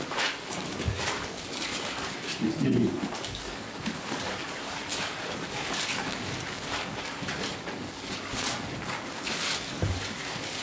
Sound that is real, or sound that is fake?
fake